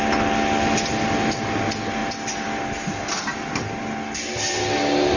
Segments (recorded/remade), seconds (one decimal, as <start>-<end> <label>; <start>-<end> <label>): 0.0-5.2 recorded